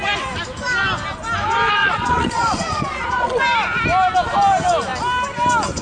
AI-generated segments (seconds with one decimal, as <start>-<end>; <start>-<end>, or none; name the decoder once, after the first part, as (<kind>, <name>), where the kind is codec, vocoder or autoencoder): 1.8-3.4 (vocoder, Vocos)